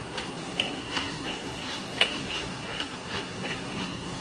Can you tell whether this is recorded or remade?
remade